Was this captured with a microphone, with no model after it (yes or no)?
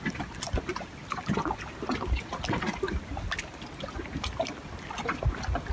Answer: yes